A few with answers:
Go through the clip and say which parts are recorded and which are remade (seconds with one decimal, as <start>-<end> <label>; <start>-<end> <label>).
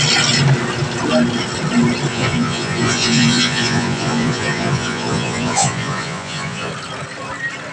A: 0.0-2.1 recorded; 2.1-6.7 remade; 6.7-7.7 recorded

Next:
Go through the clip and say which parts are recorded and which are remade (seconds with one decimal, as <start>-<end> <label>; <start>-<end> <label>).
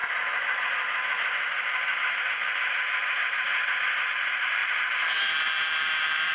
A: 0.0-2.1 recorded; 2.1-3.5 remade; 3.5-4.0 recorded; 4.0-6.3 remade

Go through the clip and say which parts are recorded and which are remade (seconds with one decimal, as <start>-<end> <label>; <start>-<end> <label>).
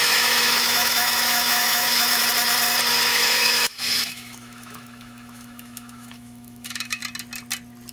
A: 0.0-2.2 remade; 2.2-3.1 recorded; 3.1-7.0 remade; 7.0-7.9 recorded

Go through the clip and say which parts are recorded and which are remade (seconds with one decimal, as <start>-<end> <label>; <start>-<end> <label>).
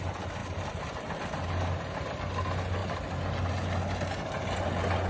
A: 0.0-5.1 recorded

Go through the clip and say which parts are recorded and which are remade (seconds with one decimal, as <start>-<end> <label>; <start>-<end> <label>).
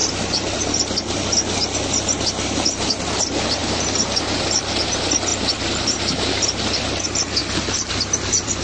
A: 0.0-3.0 recorded; 3.0-8.6 remade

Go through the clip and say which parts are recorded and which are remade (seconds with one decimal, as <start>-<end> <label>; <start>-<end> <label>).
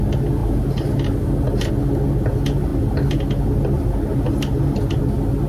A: 0.0-5.5 recorded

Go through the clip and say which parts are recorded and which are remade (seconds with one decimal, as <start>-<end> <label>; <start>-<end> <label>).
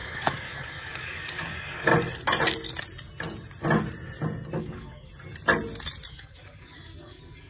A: 0.0-1.9 remade; 1.9-4.6 recorded; 4.6-5.1 remade; 5.1-6.1 recorded; 6.1-7.5 remade